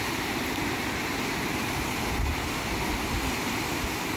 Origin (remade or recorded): recorded